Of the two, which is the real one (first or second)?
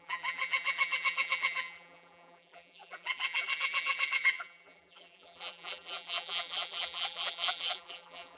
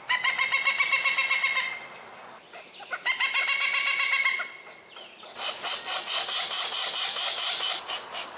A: second